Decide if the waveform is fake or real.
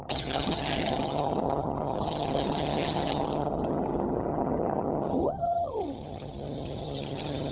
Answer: fake